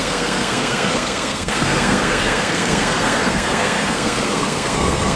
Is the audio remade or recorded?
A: remade